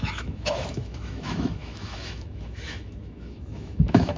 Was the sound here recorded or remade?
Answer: remade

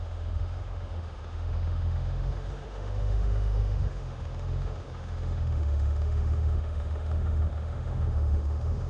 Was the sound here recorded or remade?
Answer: remade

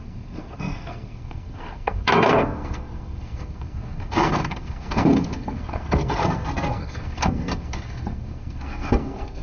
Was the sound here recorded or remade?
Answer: remade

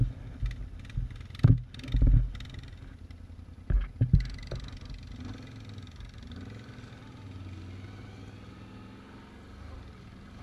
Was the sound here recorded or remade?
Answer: recorded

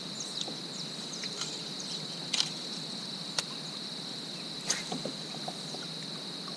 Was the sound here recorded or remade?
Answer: recorded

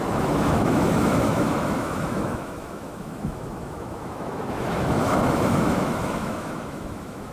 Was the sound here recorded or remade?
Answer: remade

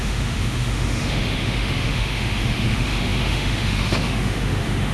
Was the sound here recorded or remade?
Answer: remade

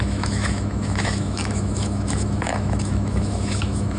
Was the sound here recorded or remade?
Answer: remade